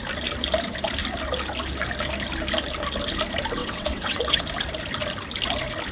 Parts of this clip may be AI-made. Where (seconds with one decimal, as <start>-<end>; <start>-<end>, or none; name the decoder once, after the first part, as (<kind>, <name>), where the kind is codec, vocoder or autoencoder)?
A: 3.6-4.4 (vocoder, WaveNeXt)

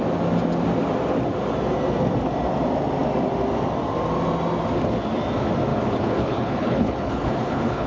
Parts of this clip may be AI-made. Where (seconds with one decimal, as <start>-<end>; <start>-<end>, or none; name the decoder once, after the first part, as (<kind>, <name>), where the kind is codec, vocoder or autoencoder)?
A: 5.7-7.9 (codec, HILCodec)

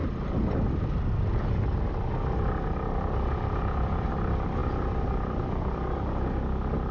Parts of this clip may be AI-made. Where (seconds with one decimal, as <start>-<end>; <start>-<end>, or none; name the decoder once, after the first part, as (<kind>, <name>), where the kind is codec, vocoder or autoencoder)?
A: none

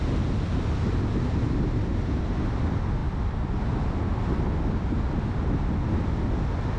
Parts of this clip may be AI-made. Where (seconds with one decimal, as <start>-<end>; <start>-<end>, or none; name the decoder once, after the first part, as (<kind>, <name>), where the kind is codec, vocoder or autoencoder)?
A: none

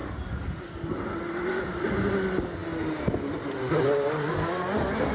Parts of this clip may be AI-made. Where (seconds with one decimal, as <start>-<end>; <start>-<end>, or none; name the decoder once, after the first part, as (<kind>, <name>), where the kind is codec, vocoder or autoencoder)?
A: none

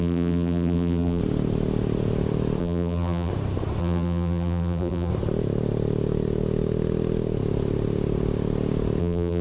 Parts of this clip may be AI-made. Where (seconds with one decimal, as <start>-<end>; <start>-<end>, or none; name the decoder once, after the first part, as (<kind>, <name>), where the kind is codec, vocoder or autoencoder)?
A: 0.0-1.2 (vocoder, BigVGAN v2); 2.6-3.3; 3.8-5.1; 9.0-9.4

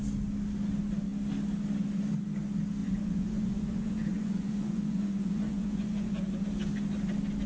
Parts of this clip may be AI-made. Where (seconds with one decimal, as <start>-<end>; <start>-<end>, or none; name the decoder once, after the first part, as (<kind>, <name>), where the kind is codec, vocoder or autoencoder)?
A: 2.8-6.4 (vocoder, Vocos)

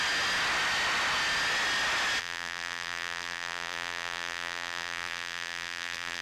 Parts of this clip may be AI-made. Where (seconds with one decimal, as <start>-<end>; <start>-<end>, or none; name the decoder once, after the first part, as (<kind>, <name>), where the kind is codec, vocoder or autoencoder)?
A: 2.2-6.2 (vocoder, BigVGAN v2)